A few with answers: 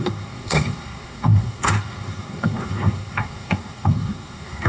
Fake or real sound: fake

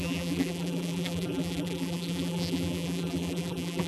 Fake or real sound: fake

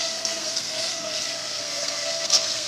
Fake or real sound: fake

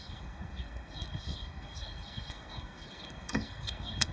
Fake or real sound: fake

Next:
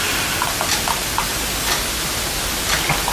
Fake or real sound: real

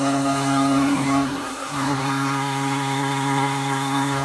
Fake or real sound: fake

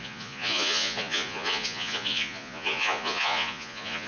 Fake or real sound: fake